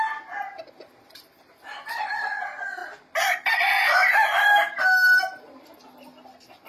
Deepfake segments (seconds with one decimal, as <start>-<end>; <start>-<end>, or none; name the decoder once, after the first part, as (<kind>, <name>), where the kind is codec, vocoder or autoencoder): none